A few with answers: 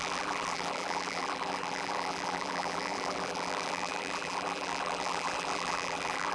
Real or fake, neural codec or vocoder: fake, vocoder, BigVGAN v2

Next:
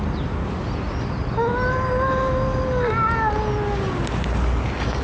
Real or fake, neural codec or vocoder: real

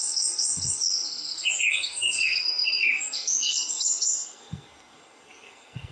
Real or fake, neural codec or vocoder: fake, codec, SNAC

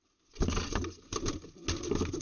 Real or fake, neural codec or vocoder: real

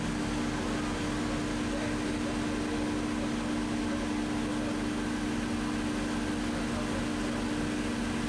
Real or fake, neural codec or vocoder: real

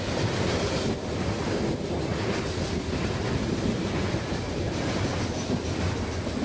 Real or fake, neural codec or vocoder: real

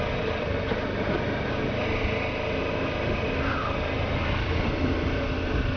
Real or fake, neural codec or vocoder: real